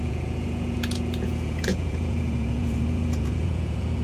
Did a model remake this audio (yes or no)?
yes